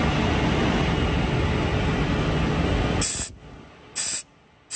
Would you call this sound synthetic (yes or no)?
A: no